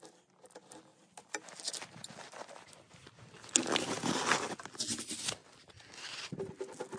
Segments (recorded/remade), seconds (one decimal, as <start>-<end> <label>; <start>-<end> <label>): 0.0-7.0 recorded